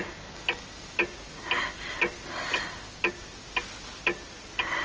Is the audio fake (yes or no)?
no